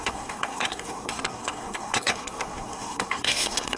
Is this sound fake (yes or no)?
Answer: yes